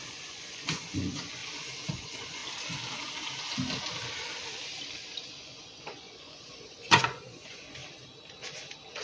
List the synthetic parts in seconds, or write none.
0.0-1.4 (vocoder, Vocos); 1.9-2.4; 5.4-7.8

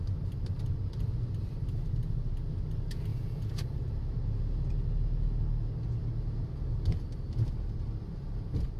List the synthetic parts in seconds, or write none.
3.1-3.6 (vocoder, Vocos)

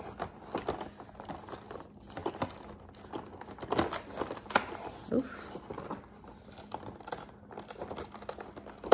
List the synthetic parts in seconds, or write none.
none

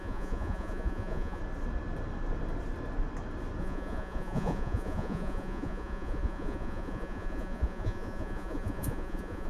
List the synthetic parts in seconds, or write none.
0.0-1.4 (vocoder, Vocos); 3.6-9.5

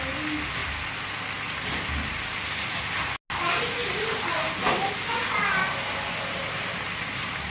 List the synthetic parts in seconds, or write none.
none